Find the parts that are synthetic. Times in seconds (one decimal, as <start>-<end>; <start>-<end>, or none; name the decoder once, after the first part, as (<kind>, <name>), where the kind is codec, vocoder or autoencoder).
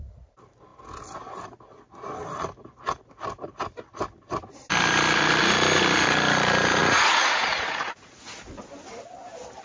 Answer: 6.8-8.3 (vocoder, Vocos)